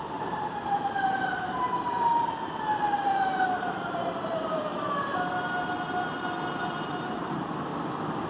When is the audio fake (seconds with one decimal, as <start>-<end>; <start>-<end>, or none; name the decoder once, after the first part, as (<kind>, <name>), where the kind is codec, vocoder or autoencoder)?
0.0-4.7 (vocoder, BigVGAN v2); 6.6-7.7